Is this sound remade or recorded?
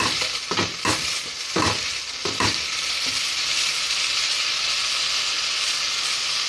remade